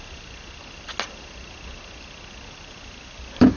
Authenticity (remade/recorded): recorded